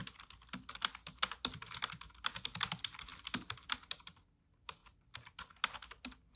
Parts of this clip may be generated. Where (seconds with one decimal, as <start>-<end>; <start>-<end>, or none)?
none

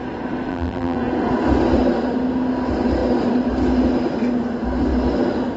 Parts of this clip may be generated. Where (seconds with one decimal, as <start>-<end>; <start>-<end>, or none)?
0.5-1.0

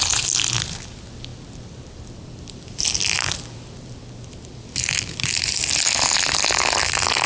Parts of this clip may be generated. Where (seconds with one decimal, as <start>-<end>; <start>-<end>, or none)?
1.3-5.7

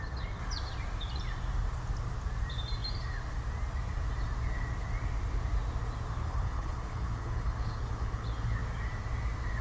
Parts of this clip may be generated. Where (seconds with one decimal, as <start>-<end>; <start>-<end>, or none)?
6.2-8.5

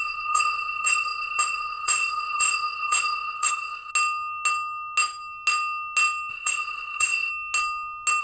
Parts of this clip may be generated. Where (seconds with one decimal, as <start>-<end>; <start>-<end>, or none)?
0.0-3.9; 6.3-7.3

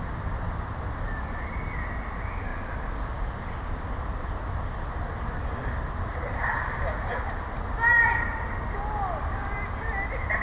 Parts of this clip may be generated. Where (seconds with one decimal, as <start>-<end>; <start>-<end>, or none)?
none

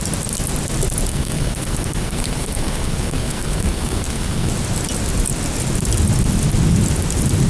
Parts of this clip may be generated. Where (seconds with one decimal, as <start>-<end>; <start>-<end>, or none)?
1.1-4.5

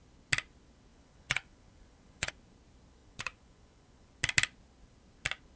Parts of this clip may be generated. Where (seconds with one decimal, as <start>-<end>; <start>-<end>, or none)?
0.9-2.3; 3.0-4.2